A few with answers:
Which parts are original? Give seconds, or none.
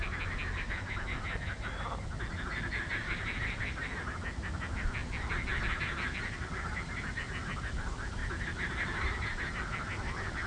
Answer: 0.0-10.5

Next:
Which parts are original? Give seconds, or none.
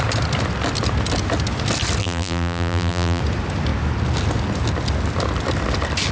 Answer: 0.0-2.0; 3.2-6.1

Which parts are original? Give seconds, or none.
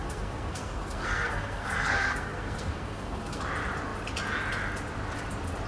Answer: 3.4-5.7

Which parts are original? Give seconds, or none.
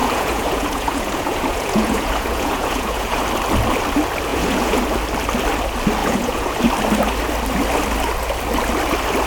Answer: 3.2-4.3; 4.8-6.0; 6.5-9.3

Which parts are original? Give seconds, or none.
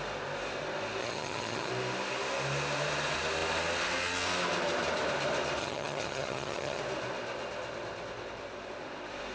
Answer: 0.0-1.0; 1.7-5.6; 6.8-9.3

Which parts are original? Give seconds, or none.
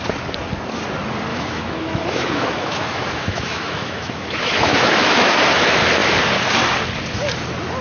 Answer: 0.0-1.3; 5.4-7.8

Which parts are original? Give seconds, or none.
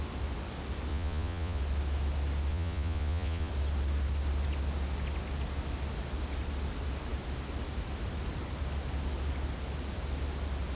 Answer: 0.0-0.9; 1.6-2.5; 3.5-10.7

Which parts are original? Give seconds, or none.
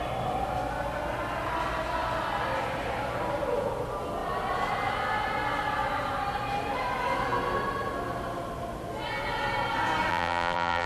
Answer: 0.0-10.1